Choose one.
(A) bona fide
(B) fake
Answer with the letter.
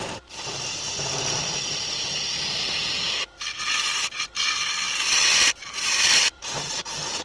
A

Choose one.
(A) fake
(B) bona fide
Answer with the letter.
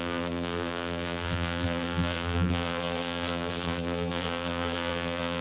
A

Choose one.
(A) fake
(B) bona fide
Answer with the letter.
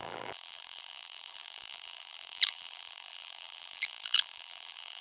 A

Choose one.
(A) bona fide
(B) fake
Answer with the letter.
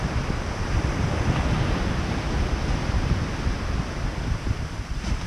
B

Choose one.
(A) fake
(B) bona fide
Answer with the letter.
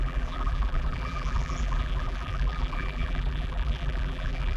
A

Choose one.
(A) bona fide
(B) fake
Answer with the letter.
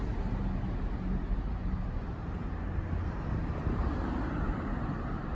B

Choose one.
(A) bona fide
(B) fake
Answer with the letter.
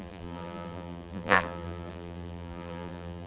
B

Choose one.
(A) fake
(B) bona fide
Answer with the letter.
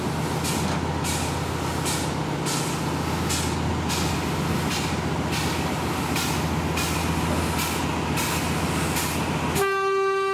B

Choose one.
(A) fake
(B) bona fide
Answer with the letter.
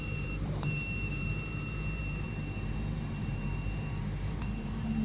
A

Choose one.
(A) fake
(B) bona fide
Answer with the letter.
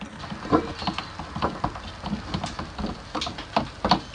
B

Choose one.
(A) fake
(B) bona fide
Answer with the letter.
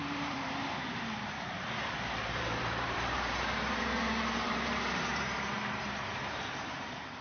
A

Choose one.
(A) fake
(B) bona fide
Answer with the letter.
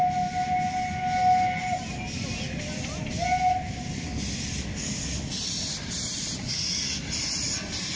B